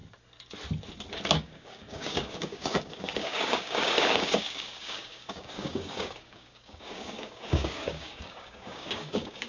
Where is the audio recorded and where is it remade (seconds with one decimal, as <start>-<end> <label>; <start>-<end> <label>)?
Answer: 0.0-1.1 recorded; 1.1-9.5 remade